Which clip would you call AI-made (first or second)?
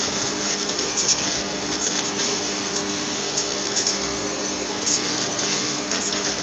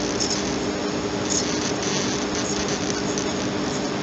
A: first